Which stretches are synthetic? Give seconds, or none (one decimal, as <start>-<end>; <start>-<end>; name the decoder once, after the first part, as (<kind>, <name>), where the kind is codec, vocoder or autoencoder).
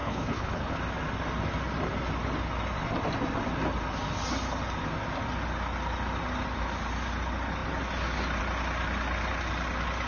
0.0-0.8 (codec, HILCodec)